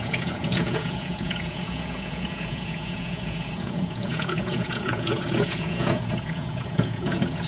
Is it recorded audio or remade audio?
remade